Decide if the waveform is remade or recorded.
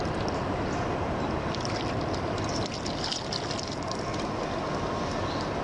recorded